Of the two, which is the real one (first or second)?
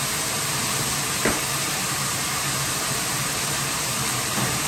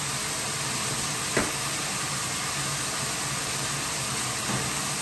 second